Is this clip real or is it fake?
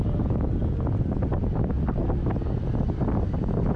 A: real